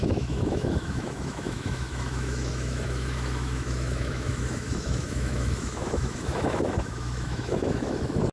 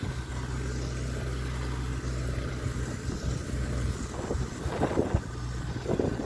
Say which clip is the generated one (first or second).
first